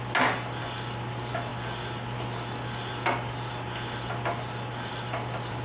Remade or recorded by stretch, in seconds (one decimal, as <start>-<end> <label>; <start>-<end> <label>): 0.0-5.6 recorded